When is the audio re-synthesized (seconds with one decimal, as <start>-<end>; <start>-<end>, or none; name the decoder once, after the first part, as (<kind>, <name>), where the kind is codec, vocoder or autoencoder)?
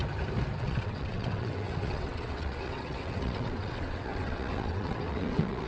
0.6-5.7 (vocoder, WaveNeXt)